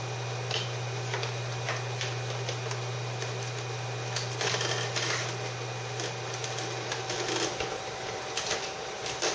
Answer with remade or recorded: recorded